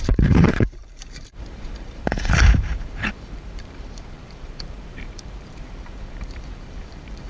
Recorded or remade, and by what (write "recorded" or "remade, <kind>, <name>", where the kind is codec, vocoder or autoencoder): remade, vocoder, BigVGAN v2